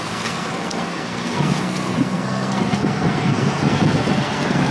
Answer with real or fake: fake